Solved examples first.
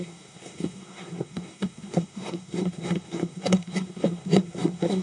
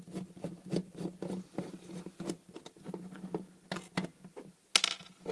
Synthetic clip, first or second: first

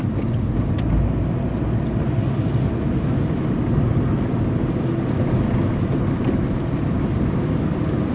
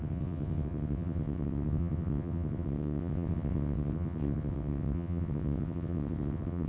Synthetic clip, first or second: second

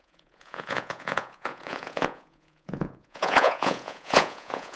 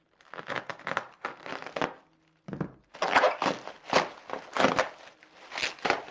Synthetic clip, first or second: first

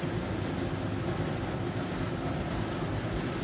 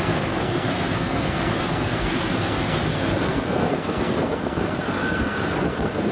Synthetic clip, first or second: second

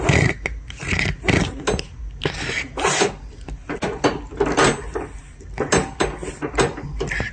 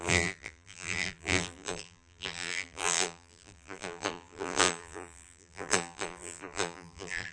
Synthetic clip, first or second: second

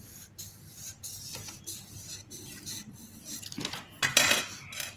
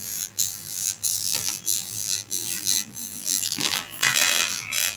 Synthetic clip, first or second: second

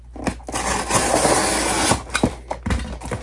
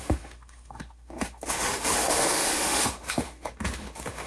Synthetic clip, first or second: second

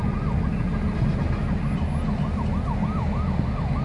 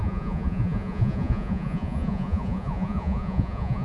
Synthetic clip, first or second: second